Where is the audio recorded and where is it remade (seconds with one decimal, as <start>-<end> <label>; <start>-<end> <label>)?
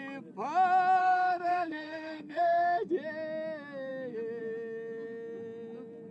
0.0-1.0 recorded; 1.0-2.9 remade; 2.9-6.1 recorded